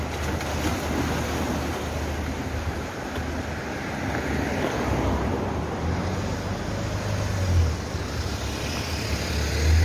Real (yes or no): yes